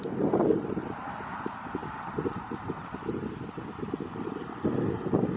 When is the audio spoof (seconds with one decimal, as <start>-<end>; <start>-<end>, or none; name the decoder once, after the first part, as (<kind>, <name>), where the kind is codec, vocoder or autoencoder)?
none